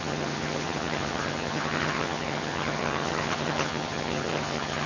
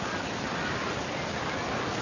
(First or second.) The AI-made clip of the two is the first